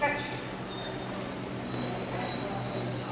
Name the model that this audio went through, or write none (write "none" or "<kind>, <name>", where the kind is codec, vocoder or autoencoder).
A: none